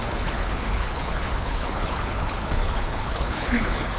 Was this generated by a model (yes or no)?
yes